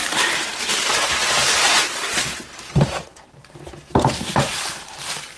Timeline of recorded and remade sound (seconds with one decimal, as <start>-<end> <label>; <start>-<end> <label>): 0.0-5.4 remade